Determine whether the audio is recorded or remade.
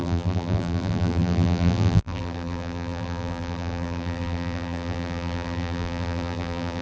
remade